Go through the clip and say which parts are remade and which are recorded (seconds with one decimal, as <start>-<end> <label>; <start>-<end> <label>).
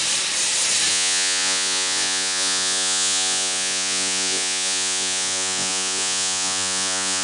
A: 0.0-0.9 recorded; 0.9-7.2 remade